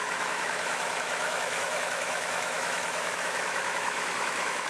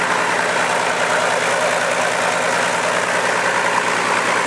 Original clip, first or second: second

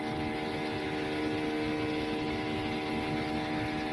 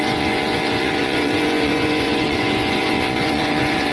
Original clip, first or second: first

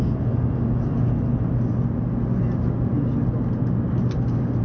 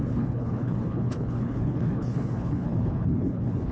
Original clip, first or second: first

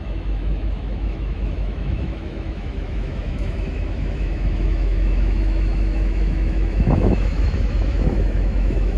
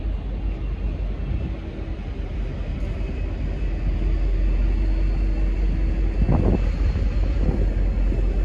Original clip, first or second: second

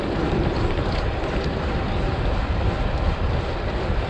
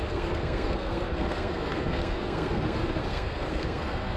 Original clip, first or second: first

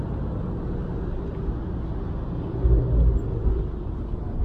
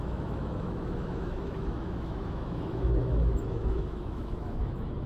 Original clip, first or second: first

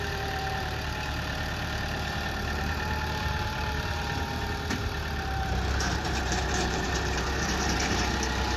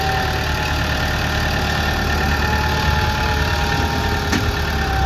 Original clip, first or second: second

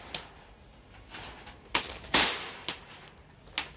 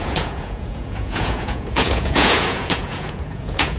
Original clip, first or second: first